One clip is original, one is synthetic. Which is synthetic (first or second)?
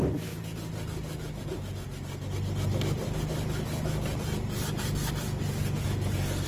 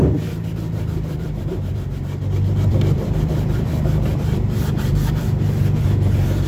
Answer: second